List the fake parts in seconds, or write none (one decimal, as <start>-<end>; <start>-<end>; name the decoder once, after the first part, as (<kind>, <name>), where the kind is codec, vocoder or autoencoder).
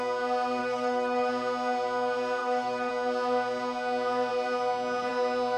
0.6-1.3 (autoencoder, DAC-VAE); 2.4-2.9